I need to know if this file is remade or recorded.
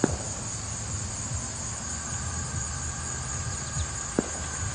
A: recorded